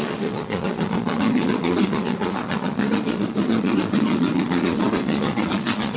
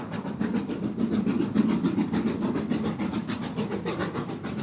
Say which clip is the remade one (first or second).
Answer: first